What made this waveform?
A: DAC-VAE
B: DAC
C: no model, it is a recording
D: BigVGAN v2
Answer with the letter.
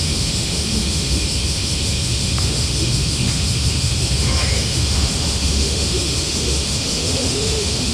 A